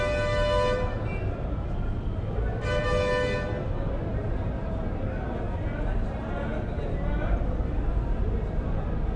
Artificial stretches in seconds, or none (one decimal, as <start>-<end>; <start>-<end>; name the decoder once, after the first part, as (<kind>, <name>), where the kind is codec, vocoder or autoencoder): none